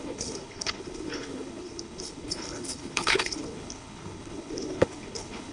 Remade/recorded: remade